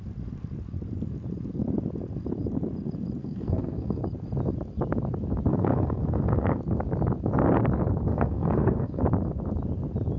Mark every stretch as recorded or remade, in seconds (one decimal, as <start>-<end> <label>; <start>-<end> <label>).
0.0-3.2 recorded; 3.2-4.0 remade; 4.0-5.5 recorded; 5.5-6.6 remade; 6.6-8.1 recorded; 8.1-9.0 remade; 9.0-10.2 recorded